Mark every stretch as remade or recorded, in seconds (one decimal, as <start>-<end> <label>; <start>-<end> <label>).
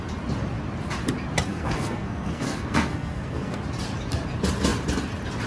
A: 0.0-1.5 recorded; 1.5-3.6 remade; 3.6-5.5 recorded